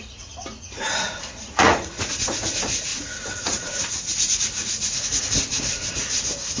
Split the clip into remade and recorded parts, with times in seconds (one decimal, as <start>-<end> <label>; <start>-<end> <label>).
0.0-6.6 remade